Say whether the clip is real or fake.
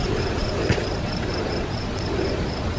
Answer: fake